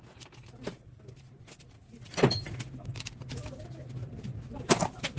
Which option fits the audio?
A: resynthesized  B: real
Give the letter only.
B